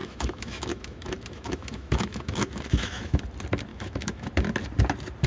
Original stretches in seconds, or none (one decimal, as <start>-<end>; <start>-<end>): 3.2-3.7; 4.3-5.3